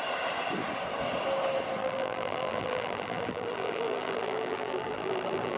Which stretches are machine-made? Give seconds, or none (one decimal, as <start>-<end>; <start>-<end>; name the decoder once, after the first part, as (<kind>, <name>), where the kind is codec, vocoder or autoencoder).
1.8-5.6 (vocoder, BigVGAN v2)